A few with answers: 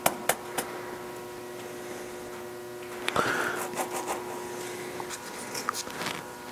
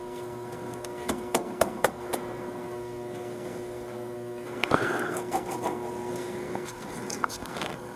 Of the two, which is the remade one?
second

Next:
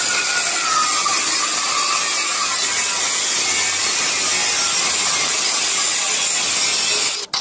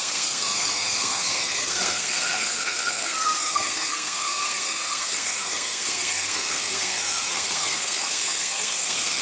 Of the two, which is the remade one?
second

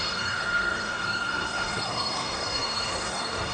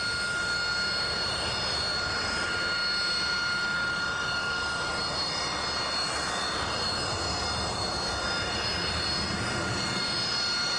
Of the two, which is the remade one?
first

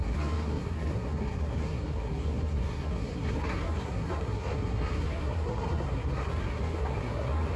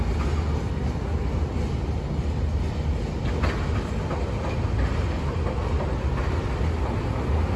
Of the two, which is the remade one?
first